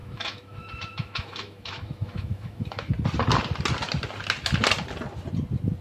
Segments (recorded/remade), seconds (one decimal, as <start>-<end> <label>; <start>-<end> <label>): 0.0-2.9 remade; 2.9-5.8 recorded